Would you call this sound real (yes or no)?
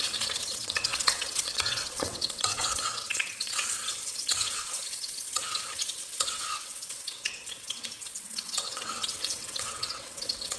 no